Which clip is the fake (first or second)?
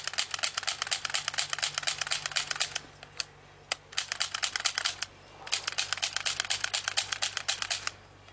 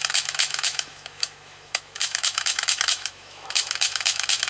second